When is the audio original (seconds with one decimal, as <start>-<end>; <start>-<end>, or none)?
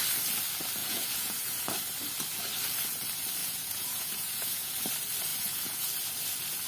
0.0-0.8; 1.7-3.4; 4.7-5.3; 5.9-6.7